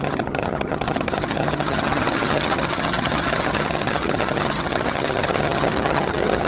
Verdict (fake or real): fake